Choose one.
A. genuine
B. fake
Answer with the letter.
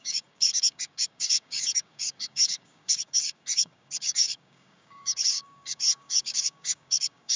B